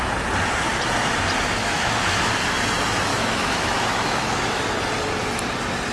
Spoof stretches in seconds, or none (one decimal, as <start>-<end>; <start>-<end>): 1.6-2.3; 3.1-4.6